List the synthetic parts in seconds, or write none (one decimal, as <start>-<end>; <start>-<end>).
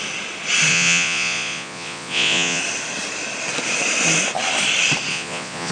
0.7-2.6; 5.1-5.7